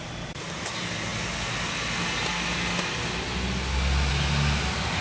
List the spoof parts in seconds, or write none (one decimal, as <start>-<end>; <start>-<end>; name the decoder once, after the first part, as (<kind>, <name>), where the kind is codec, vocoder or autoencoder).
none